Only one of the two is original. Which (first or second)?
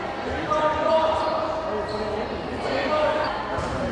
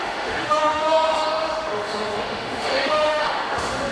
first